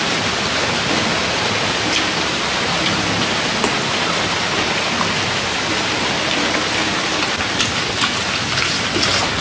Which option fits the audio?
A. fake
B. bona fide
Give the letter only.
B